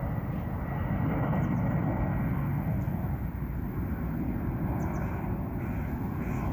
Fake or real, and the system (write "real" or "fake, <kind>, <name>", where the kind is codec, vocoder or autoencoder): real